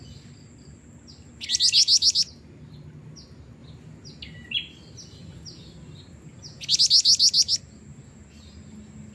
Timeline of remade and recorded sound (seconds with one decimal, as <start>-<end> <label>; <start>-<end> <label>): 0.0-9.1 recorded